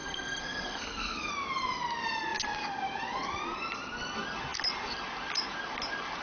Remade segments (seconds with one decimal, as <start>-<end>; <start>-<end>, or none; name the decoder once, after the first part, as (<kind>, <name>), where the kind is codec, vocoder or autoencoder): 0.0-1.3 (codec, SNAC)